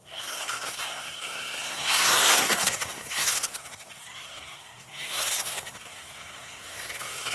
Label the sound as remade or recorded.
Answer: remade